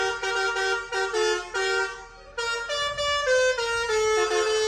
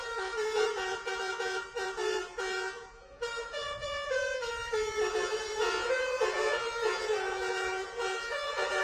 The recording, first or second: first